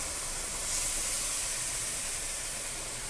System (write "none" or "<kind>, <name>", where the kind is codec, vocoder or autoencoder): vocoder, BigVGAN v2